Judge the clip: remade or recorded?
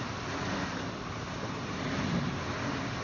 recorded